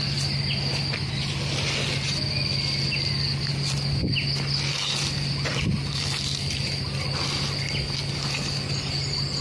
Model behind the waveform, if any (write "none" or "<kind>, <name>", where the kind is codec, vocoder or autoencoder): none